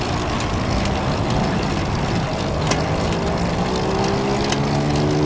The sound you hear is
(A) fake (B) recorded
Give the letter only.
B